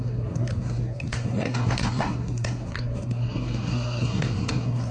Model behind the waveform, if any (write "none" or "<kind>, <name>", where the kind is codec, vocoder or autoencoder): codec, SNAC